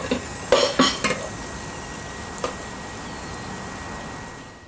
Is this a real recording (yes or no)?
yes